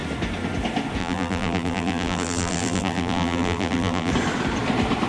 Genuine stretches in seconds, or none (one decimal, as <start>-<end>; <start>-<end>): 0.0-1.0; 4.1-5.1